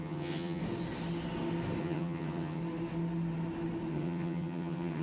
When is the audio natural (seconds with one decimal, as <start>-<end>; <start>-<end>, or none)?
0.6-1.8; 2.6-3.9